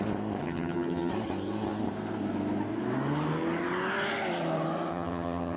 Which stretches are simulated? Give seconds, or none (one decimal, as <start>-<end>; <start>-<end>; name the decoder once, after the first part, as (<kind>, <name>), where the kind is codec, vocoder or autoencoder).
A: 0.4-1.1 (vocoder, HiFi-GAN); 4.9-5.6